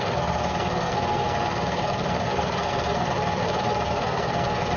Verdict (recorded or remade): remade